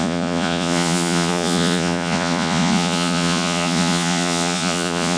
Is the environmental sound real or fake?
fake